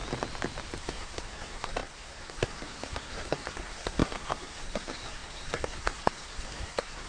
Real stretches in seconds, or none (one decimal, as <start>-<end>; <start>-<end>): 0.0-0.8